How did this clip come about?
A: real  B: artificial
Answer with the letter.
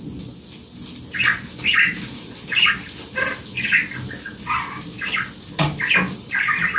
A